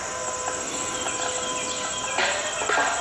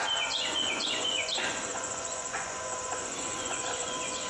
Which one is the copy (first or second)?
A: second